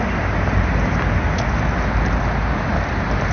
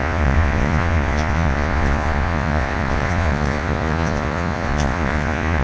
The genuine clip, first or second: first